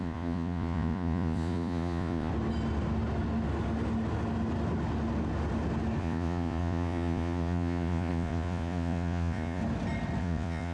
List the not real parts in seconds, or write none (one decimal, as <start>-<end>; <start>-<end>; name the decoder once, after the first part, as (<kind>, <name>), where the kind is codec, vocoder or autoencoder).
0.0-2.3 (vocoder, Vocos); 6.0-9.6; 10.2-10.7